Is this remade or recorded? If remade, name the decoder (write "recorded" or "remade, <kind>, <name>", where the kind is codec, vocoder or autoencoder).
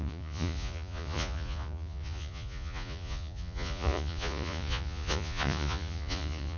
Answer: remade, vocoder, Vocos